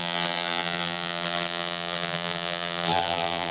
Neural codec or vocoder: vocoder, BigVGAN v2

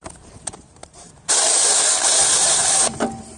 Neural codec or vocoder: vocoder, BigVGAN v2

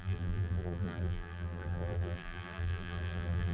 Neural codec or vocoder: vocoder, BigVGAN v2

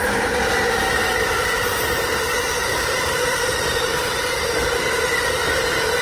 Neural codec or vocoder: vocoder, BigVGAN v2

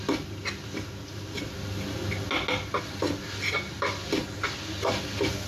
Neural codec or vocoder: none